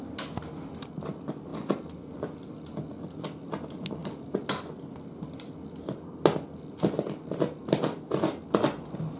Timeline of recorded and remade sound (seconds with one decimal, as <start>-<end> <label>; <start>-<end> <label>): 0.0-9.2 recorded

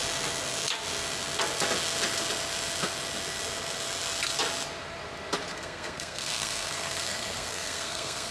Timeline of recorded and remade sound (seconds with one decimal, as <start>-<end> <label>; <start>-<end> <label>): 0.0-5.5 recorded; 5.5-8.3 remade